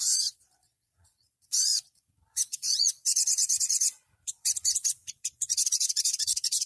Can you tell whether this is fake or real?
fake